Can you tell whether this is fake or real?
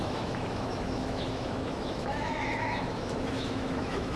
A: fake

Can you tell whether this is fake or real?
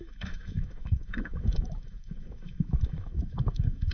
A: fake